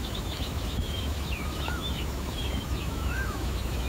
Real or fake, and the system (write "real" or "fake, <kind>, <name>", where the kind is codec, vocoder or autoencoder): fake, autoencoder, DAC-VAE